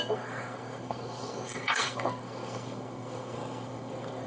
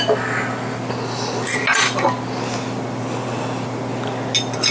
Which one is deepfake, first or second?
first